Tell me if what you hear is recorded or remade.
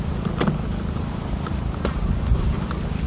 recorded